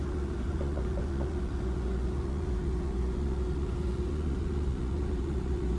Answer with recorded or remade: remade